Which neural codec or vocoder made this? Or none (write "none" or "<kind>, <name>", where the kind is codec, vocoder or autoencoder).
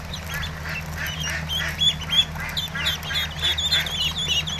none